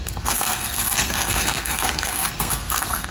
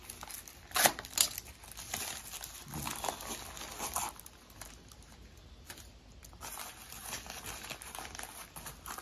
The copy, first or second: first